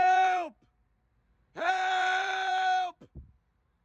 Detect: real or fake fake